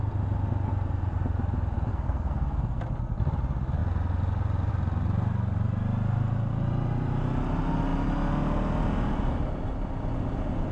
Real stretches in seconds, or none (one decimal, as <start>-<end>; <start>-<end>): 0.0-1.9; 2.8-10.7